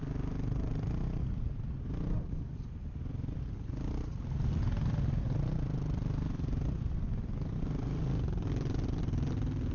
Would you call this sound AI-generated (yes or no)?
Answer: no